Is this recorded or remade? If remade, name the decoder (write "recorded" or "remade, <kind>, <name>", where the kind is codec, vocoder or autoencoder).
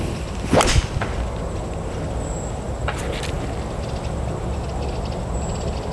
recorded